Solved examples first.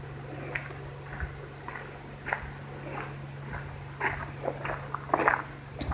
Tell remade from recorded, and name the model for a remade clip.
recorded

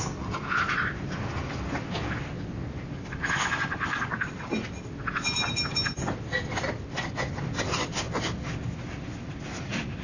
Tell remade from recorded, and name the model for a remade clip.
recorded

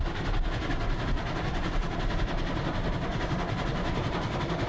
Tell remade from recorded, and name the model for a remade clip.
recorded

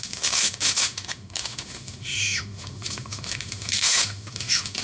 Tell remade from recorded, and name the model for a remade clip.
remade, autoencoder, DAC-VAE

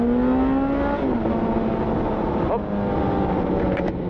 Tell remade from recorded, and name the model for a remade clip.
recorded